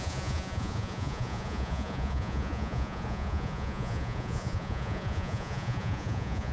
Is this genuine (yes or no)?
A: no